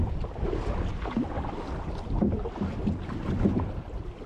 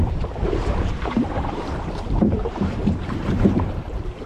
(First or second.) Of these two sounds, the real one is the first